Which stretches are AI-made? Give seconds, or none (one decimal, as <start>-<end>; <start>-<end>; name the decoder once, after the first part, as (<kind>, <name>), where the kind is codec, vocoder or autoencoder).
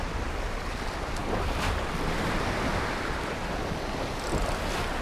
none